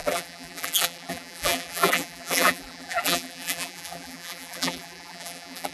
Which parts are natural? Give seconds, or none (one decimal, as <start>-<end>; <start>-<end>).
none